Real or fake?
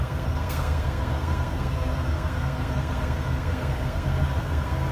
fake